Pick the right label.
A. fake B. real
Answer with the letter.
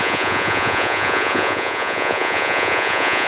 A